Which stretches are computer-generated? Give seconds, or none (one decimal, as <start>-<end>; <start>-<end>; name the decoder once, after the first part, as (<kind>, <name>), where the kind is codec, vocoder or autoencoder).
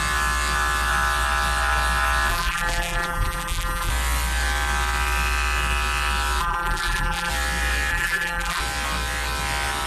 2.3-3.9 (vocoder, BigVGAN v2); 6.4-7.3; 7.9-8.6